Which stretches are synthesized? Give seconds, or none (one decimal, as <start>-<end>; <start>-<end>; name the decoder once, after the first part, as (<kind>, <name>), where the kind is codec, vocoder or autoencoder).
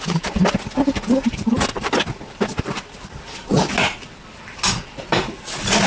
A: 0.0-5.9 (vocoder, BigVGAN v2)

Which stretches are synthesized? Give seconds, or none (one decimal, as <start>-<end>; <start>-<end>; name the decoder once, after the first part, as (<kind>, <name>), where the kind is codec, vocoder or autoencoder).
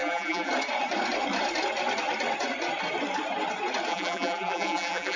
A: 0.0-0.5 (vocoder, BigVGAN v2); 3.9-5.2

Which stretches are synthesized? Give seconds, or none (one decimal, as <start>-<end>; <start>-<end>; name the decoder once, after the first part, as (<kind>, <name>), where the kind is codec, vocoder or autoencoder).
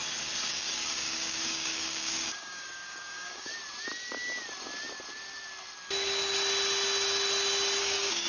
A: 0.5-3.5 (codec, DAC); 7.8-8.3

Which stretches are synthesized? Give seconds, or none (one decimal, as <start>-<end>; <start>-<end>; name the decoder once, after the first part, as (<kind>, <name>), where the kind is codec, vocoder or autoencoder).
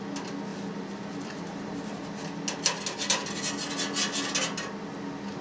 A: 0.5-2.0 (vocoder, BigVGAN v2)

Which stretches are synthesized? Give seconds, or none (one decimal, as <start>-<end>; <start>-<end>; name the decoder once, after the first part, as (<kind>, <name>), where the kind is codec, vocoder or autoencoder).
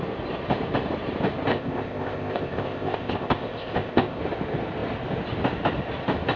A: 1.5-4.2 (codec, ZipCodec)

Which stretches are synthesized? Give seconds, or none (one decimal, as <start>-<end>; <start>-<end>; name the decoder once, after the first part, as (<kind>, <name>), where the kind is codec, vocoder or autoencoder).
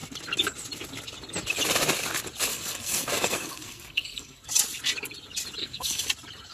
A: 2.5-4.5 (codec, SNAC); 5.6-6.1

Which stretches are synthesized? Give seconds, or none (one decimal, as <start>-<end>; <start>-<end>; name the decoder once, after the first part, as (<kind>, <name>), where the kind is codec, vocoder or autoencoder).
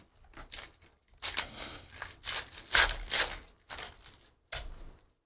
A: 1.4-1.9 (codec, SNAC)